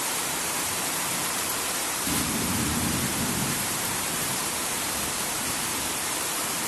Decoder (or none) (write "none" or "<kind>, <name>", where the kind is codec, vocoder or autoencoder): vocoder, BigVGAN v2